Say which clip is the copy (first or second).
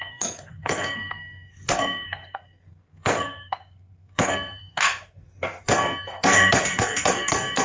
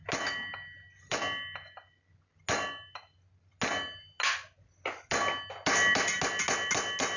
first